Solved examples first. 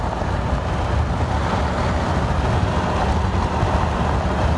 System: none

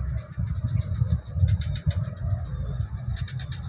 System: none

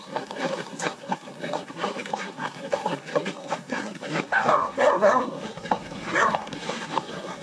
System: codec, SNAC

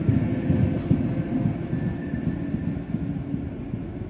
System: none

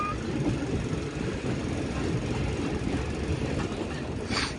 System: none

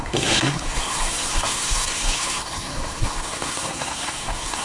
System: codec, SNAC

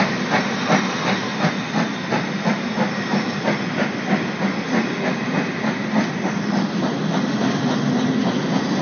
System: none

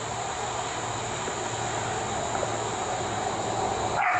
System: none